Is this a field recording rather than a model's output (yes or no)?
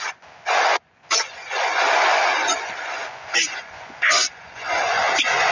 no